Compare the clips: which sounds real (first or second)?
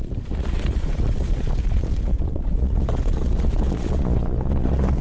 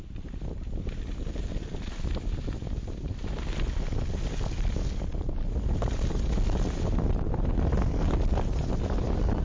second